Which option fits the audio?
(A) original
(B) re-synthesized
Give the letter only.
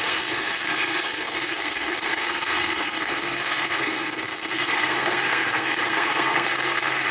B